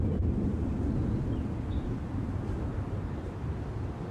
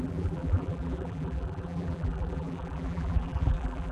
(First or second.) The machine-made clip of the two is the second